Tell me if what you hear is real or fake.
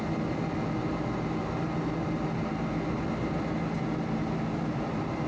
real